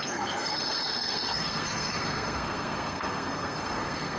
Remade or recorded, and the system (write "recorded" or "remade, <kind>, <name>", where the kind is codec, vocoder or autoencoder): remade, codec, SNAC